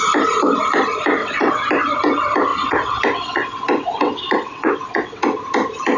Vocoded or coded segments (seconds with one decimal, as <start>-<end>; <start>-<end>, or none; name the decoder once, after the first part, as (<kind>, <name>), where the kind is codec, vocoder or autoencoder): 1.2-1.7 (vocoder, WaveNeXt); 2.5-5.2